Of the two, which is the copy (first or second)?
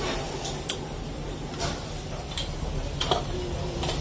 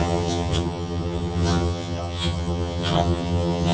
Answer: second